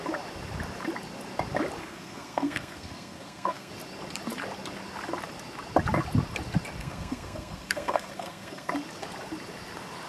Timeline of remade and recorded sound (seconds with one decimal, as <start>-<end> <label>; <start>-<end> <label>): 0.0-1.8 recorded; 1.8-3.7 remade; 3.7-6.8 recorded; 6.8-8.7 remade; 8.7-10.1 recorded